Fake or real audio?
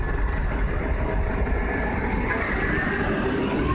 real